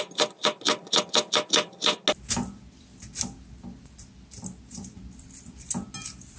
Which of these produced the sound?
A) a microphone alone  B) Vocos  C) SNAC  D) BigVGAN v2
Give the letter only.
A